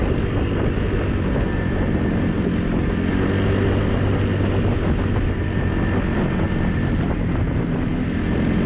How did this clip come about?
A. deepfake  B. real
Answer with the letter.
B